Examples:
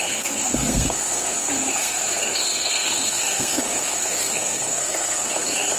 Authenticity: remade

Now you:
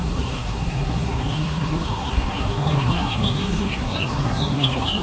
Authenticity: remade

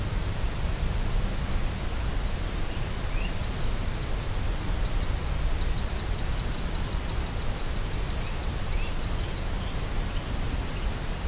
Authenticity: recorded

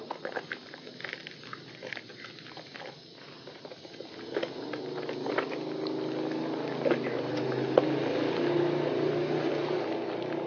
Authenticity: recorded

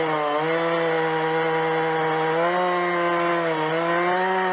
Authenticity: recorded